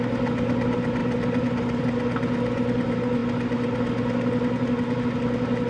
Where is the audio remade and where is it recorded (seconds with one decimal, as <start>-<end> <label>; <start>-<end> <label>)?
0.0-5.7 recorded